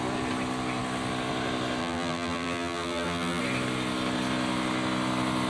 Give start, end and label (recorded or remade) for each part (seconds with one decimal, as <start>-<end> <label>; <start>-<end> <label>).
0.0-1.8 recorded; 1.8-3.4 remade; 3.4-5.5 recorded